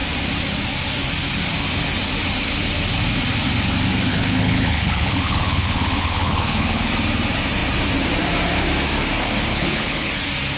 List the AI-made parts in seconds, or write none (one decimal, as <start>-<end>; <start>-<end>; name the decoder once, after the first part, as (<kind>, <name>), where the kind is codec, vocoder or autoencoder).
4.1-6.9 (codec, HILCodec); 9.5-10.1